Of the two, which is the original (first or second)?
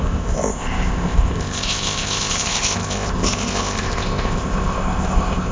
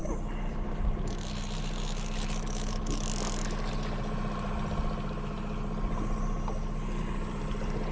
second